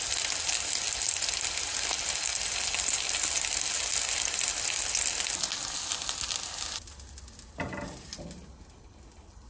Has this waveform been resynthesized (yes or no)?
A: no